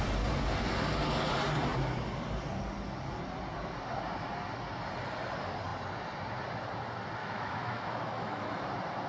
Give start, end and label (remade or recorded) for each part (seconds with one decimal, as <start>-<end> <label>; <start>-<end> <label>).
0.0-7.2 recorded; 7.2-8.6 remade; 8.6-9.1 recorded